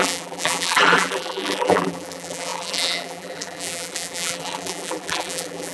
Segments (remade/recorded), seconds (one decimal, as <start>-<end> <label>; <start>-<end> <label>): 0.0-5.7 remade